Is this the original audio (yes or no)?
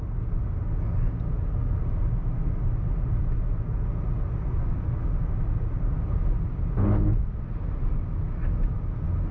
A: yes